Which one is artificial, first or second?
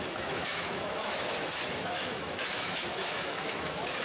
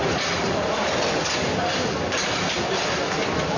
first